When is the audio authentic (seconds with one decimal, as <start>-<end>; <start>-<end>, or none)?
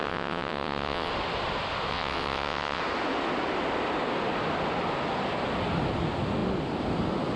1.1-1.9; 2.8-7.4